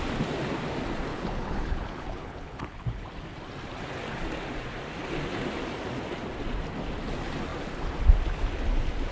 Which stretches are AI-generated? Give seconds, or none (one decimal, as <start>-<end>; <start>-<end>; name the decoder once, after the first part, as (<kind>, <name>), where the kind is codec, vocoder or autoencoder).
1.1-3.1 (codec, HILCodec)